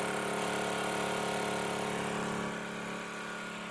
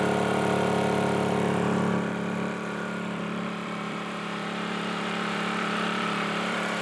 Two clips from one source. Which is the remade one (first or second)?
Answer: second